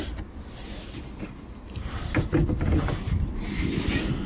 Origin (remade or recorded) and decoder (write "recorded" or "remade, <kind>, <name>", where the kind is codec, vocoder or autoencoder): recorded